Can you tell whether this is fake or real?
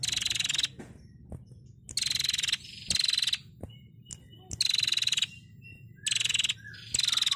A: real